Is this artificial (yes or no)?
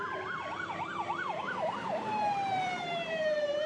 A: yes